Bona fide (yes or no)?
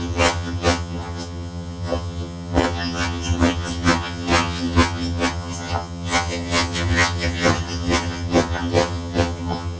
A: no